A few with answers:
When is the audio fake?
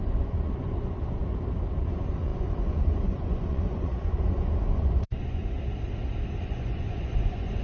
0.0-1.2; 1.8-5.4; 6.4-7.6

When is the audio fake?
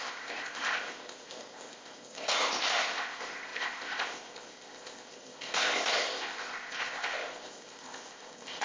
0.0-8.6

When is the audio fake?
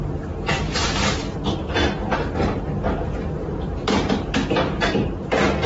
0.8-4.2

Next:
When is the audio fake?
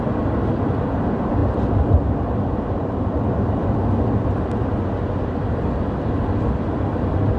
1.4-4.7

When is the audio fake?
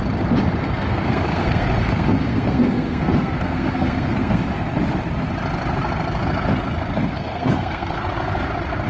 0.6-4.4; 7.1-8.0